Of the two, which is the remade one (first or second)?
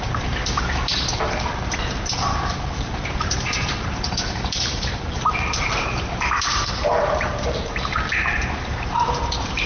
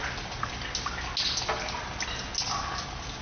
first